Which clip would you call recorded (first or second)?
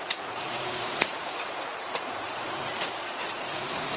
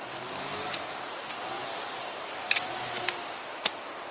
second